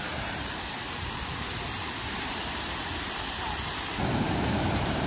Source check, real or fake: fake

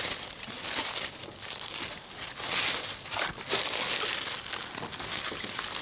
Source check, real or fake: real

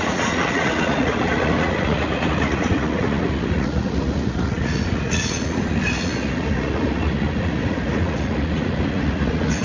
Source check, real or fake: fake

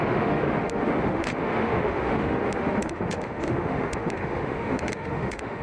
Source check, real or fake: fake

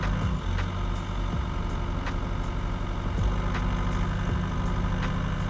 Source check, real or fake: real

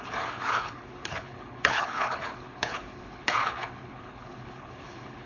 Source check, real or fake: fake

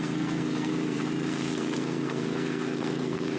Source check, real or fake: fake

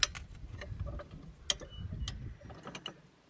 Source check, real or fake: real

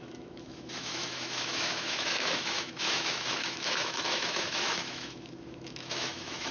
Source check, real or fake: fake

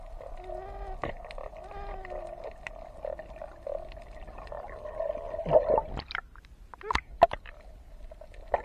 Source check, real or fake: real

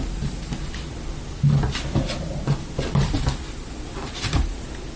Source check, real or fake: real